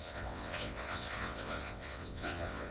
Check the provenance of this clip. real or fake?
fake